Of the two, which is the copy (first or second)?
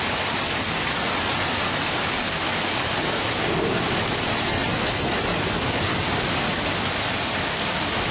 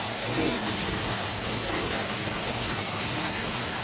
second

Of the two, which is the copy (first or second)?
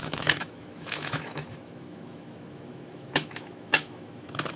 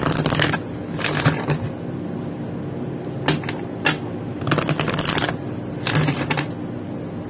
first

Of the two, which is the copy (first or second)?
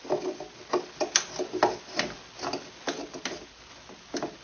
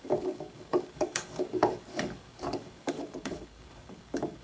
second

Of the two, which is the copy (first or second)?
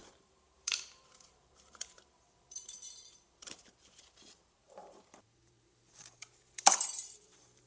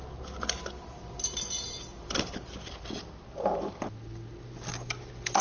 first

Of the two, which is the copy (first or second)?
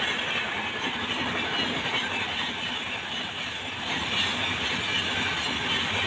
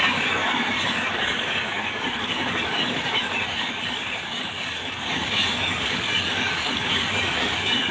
second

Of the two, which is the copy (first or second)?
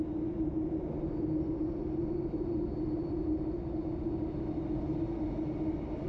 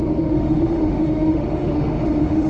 second